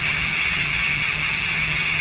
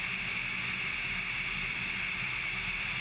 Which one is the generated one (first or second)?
first